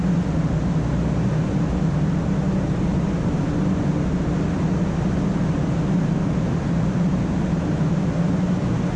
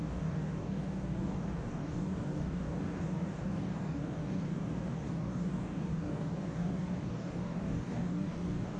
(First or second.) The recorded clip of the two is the first